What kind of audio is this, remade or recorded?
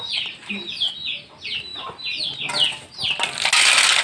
recorded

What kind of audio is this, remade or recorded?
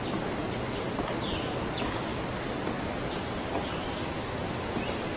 remade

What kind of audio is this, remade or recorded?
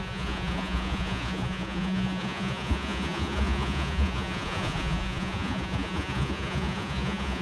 remade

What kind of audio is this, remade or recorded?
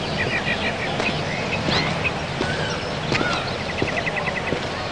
recorded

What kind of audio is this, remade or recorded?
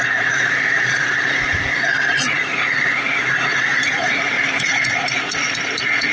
remade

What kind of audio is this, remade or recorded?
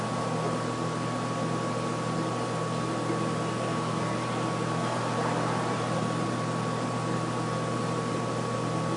recorded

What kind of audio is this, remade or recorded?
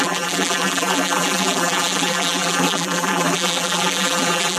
remade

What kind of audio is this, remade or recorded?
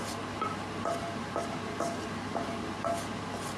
recorded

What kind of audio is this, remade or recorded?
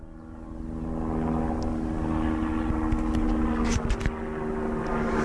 recorded